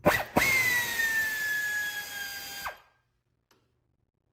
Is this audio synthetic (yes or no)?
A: no